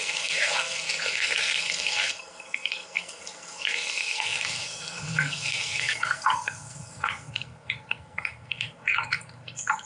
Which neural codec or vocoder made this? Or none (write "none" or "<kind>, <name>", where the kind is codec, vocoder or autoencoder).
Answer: codec, SNAC